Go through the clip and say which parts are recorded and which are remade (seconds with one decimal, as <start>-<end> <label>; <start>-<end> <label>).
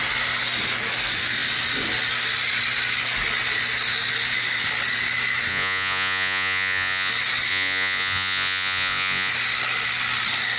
0.0-5.5 recorded; 5.5-7.1 remade; 7.1-7.5 recorded; 7.5-9.3 remade; 9.3-10.6 recorded